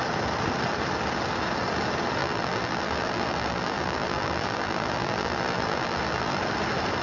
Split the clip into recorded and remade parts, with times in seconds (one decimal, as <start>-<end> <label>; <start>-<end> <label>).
0.0-2.2 recorded; 2.2-6.4 remade; 6.4-7.0 recorded